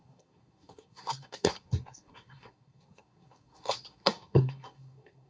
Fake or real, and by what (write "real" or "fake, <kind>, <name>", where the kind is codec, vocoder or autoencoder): fake, codec, SNAC